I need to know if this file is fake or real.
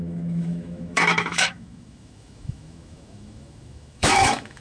fake